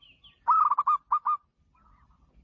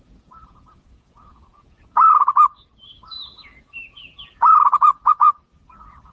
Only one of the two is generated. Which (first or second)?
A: second